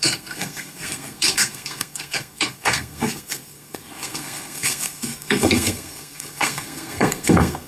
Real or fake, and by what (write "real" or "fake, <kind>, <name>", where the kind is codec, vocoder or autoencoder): fake, codec, SNAC